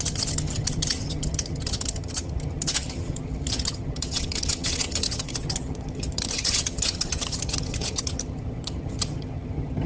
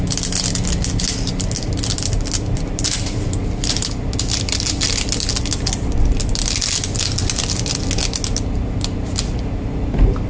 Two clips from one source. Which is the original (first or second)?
second